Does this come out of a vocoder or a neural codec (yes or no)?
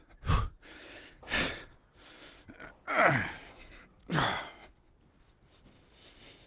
no